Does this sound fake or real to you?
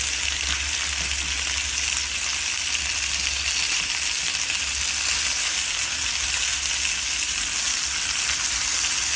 real